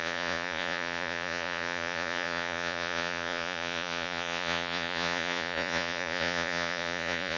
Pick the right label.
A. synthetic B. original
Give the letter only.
A